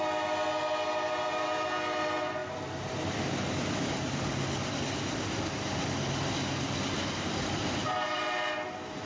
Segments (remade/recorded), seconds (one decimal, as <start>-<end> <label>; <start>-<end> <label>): 0.0-9.1 recorded